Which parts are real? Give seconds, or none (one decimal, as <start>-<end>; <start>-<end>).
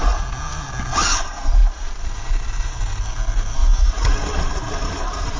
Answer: 0.0-1.6; 2.8-5.4